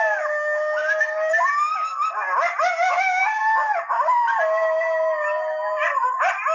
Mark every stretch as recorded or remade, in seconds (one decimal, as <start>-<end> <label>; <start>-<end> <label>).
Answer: 0.0-6.5 recorded